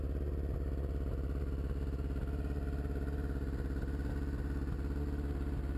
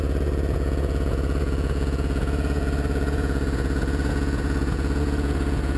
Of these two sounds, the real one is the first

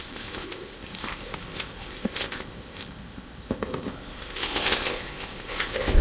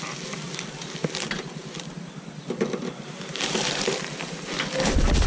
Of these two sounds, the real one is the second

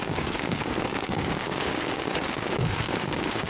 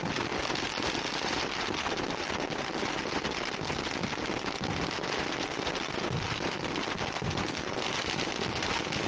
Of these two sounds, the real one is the second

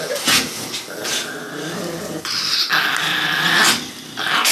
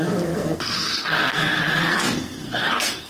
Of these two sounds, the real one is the first